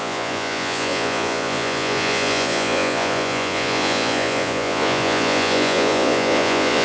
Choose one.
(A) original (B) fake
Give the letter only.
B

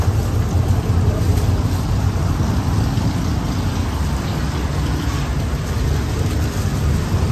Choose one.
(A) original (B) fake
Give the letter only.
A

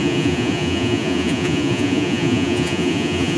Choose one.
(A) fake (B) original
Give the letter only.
A